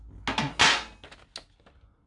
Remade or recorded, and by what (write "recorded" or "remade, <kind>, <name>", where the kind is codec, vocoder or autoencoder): recorded